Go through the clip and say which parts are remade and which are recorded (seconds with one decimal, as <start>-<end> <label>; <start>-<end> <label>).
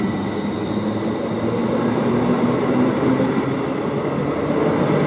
0.0-5.1 recorded